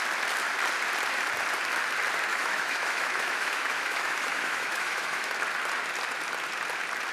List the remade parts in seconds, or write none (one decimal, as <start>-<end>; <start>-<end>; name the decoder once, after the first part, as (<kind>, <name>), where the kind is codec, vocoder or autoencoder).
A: 2.3-5.3 (autoencoder, DAC-VAE)